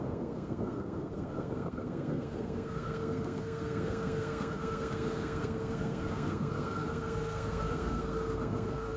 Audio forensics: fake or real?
fake